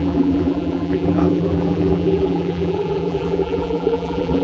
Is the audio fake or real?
fake